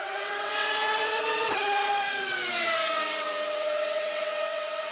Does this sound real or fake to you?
fake